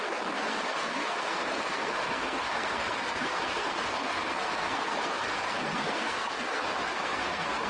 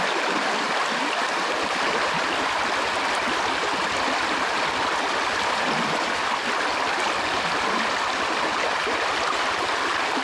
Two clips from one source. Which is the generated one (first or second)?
first